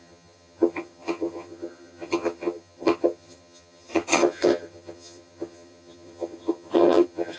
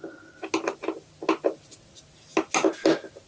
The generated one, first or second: first